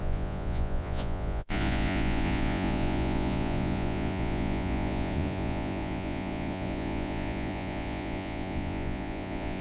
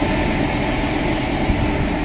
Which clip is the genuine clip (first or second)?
second